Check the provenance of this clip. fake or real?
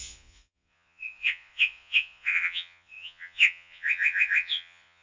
fake